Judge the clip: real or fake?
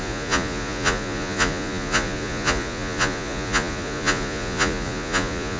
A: fake